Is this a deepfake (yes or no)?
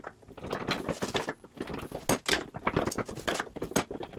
no